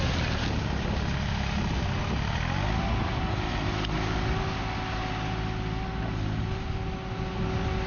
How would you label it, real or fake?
real